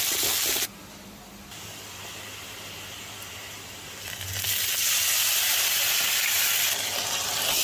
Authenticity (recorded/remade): recorded